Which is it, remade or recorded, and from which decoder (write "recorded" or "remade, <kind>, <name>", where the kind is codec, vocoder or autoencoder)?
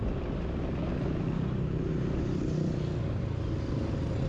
recorded